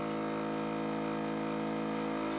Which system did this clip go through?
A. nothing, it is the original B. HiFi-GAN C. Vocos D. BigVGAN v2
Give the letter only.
A